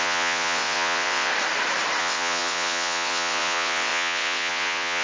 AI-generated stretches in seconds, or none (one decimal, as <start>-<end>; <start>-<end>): 0.0-1.3; 2.0-5.0